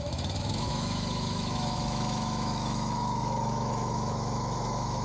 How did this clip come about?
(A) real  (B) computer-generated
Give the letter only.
B